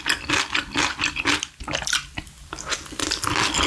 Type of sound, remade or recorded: recorded